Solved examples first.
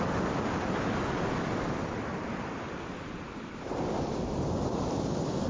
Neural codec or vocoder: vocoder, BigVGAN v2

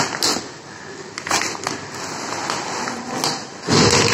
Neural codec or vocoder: none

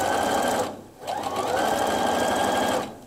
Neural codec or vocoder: none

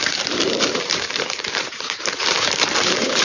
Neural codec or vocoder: vocoder, BigVGAN v2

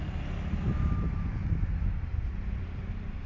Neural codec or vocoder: none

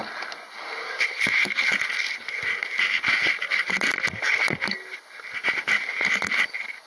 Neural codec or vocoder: none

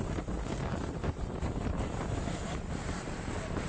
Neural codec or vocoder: vocoder, BigVGAN v2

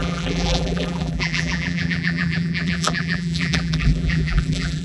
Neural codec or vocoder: vocoder, BigVGAN v2